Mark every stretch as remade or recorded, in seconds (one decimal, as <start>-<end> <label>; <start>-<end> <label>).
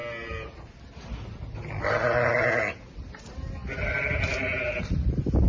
0.0-5.5 recorded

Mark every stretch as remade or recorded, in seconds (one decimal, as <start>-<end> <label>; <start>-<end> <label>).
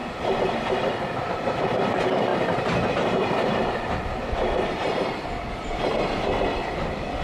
0.0-2.3 remade; 2.3-2.9 recorded; 2.9-7.2 remade